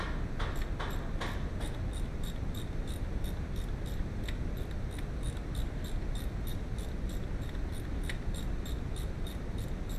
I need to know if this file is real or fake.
real